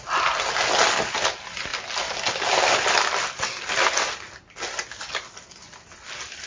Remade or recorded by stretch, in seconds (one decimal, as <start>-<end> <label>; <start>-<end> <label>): 0.0-6.5 recorded